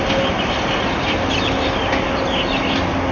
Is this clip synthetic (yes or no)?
no